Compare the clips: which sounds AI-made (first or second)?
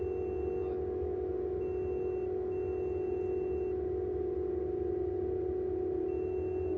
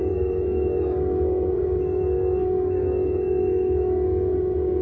second